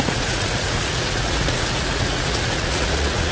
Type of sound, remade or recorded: remade